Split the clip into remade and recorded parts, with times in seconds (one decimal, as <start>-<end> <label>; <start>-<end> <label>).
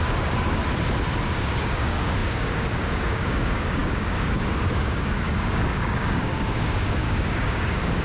0.0-0.6 remade; 0.6-1.3 recorded; 1.3-8.0 remade